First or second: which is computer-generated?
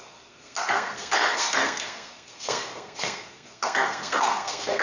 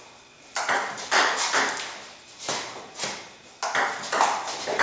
first